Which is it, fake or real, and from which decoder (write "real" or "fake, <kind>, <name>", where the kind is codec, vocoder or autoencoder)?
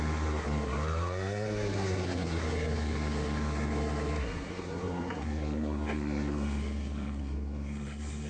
fake, codec, SNAC